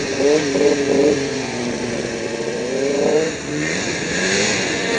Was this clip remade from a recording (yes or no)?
yes